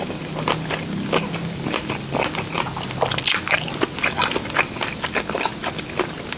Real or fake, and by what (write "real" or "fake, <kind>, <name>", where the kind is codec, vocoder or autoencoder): real